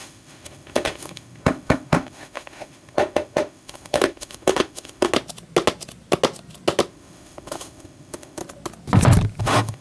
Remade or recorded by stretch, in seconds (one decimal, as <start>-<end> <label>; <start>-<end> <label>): 0.0-5.1 remade; 5.1-6.9 recorded; 6.9-8.4 remade; 8.4-9.4 recorded; 9.4-9.8 remade

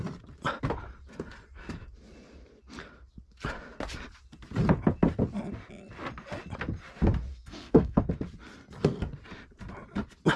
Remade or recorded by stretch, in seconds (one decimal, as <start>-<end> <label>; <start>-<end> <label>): 0.0-7.3 recorded; 7.3-8.0 remade; 8.0-10.4 recorded

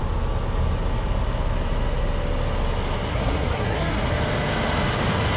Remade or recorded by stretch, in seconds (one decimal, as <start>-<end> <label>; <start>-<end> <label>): 0.0-3.1 recorded; 3.1-4.1 remade; 4.1-5.4 recorded